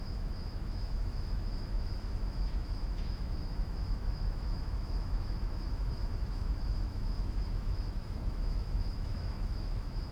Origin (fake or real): fake